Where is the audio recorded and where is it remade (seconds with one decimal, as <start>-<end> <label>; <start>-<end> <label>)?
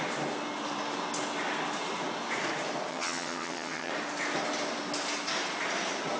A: 0.0-2.9 recorded; 2.9-3.9 remade; 3.9-6.2 recorded